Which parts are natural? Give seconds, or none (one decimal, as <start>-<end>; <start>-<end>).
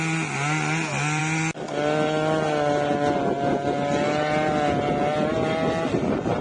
0.0-6.4